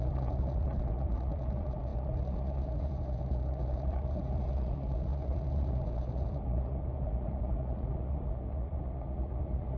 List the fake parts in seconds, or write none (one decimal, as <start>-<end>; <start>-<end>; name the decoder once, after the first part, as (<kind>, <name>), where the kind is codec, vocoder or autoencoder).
0.0-9.8 (vocoder, Vocos)